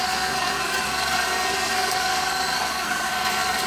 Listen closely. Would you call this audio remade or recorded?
remade